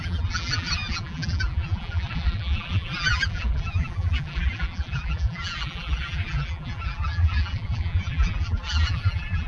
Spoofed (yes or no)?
yes